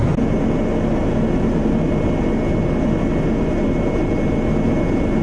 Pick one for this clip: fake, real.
real